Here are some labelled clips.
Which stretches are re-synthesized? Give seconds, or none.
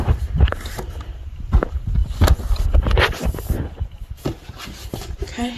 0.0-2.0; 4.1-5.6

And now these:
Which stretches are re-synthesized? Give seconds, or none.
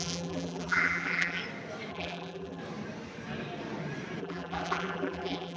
0.0-1.4; 1.9-2.6; 4.2-5.6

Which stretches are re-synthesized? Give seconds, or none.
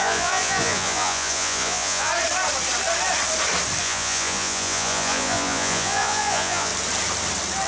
0.0-2.1; 3.8-6.7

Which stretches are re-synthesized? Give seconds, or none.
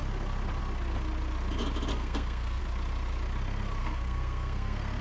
1.9-2.6; 3.8-5.0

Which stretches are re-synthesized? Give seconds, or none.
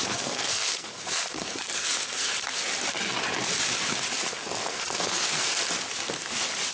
0.0-2.3; 4.3-5.6